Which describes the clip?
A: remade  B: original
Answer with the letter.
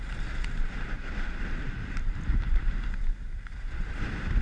A